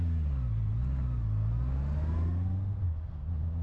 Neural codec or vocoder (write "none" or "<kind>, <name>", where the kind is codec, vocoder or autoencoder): none